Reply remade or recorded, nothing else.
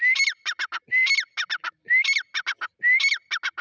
recorded